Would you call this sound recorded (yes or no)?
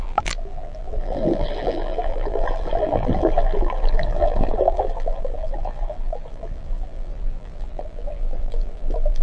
no